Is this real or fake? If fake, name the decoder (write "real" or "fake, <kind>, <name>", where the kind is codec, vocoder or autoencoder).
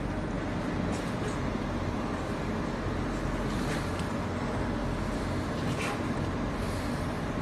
real